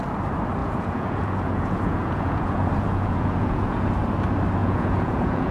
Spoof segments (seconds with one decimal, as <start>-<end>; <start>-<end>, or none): 0.6-3.9; 4.6-5.5